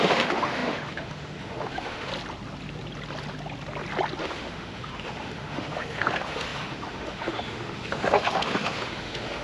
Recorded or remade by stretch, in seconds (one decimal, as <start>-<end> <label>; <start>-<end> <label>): 0.0-2.1 remade; 2.1-4.2 recorded; 4.2-9.4 remade